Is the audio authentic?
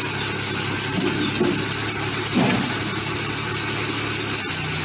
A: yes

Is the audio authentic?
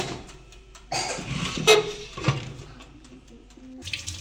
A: no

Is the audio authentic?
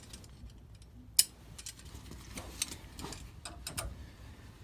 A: yes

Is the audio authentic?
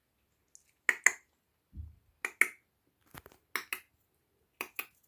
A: yes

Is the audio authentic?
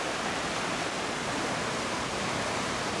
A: yes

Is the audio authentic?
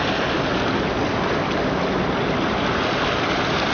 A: yes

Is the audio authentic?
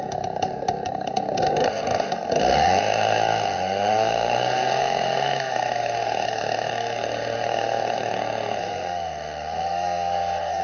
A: no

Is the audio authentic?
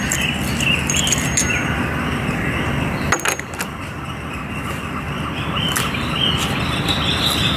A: yes